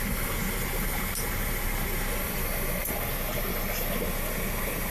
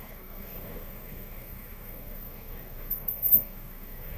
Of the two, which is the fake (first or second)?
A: second